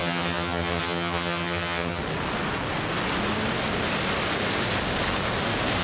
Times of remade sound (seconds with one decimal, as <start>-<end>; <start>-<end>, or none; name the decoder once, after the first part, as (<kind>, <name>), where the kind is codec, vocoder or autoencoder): 0.0-2.0 (vocoder, HiFi-GAN)